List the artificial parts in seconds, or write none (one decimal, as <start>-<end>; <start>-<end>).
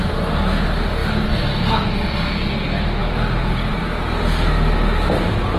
none